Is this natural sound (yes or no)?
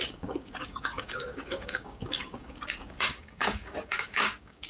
no